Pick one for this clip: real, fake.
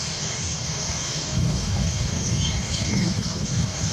fake